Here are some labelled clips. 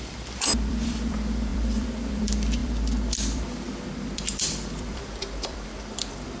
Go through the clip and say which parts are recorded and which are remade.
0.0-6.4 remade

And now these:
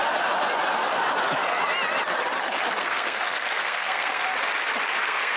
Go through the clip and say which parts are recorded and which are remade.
0.0-2.8 recorded; 2.8-4.2 remade; 4.2-5.0 recorded; 5.0-5.4 remade